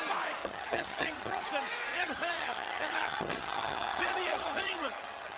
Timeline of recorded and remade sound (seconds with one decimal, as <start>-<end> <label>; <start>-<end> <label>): 0.0-0.4 recorded; 0.4-1.4 remade; 1.4-1.9 recorded; 1.9-5.4 remade